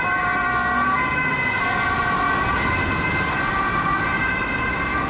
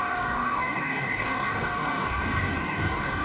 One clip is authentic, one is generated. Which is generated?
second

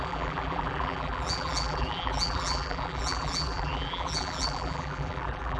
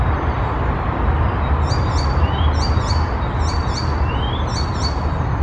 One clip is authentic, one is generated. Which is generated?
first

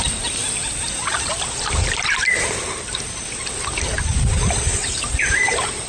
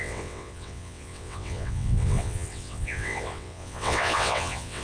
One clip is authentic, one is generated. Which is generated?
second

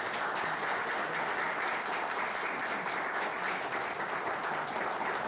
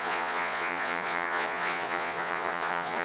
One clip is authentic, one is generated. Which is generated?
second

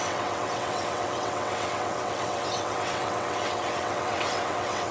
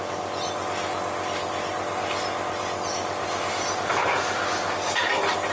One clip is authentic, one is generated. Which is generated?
first